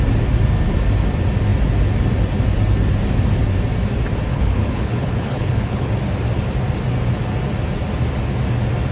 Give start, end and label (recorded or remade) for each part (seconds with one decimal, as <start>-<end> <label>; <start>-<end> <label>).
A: 0.0-4.3 recorded; 4.3-5.9 remade; 5.9-8.9 recorded